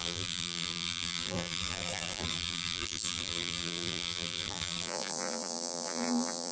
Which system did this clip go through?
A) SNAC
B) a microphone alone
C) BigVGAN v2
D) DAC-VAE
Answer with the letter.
C